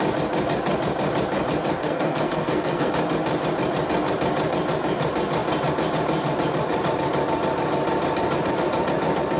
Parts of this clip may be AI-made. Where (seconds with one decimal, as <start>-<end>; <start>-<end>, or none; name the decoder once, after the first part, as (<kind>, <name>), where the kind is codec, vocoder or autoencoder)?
1.8-2.9 (codec, SNAC)